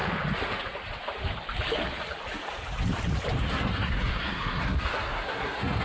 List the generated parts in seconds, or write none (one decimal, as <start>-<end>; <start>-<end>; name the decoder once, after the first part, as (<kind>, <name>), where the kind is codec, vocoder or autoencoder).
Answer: 3.5-5.8 (codec, SNAC)